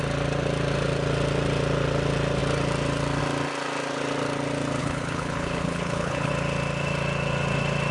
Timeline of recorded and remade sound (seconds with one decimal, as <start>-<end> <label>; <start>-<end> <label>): 0.0-4.8 recorded; 4.8-6.3 remade; 6.3-7.9 recorded